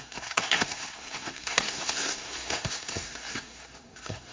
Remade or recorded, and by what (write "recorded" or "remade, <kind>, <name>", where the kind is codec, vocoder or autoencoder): remade, codec, SNAC